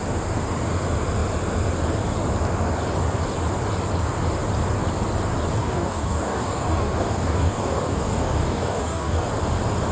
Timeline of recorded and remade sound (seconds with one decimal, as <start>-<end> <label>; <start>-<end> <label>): 0.0-5.6 recorded; 5.6-9.3 remade; 9.3-9.9 recorded